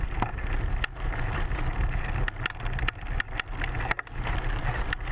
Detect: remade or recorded recorded